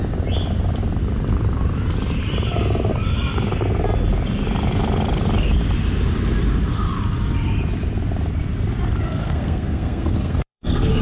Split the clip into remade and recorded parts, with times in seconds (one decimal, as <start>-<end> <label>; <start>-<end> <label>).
0.0-9.2 recorded; 9.2-11.0 remade